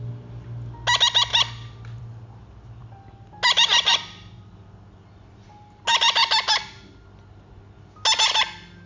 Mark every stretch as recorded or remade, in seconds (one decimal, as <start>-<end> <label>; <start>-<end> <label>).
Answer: 0.0-8.9 recorded